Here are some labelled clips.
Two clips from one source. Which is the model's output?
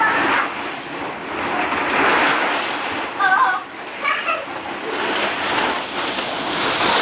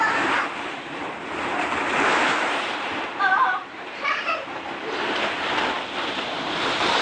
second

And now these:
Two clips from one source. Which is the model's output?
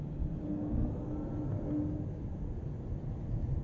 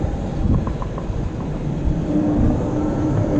second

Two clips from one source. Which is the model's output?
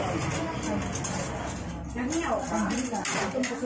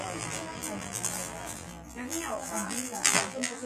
second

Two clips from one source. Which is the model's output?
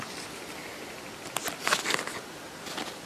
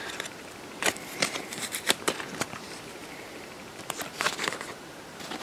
second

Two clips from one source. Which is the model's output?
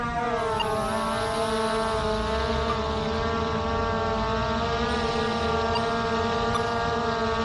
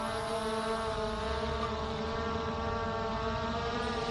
second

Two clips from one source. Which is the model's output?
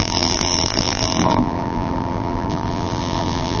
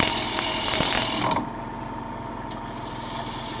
first